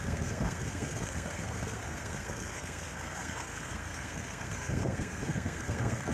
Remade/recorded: remade